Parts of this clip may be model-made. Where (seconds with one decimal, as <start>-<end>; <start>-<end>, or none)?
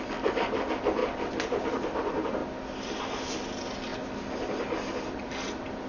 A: none